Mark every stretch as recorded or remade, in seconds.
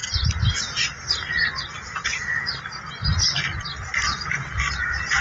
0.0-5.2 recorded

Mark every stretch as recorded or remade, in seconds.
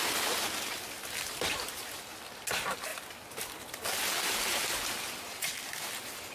0.0-6.3 recorded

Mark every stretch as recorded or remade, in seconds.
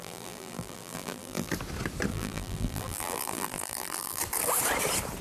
0.0-1.5 remade; 1.5-2.1 recorded; 2.1-4.2 remade; 4.2-5.2 recorded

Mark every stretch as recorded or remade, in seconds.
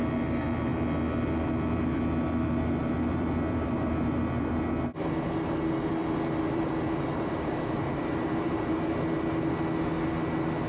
0.0-2.8 recorded; 2.8-4.5 remade; 4.5-6.0 recorded; 6.0-8.9 remade; 8.9-10.7 recorded